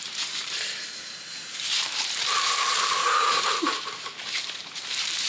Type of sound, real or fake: fake